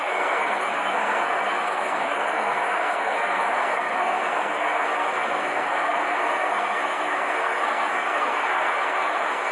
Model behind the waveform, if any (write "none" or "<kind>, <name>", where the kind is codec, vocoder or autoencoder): codec, SNAC